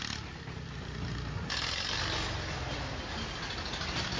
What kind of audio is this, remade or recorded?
recorded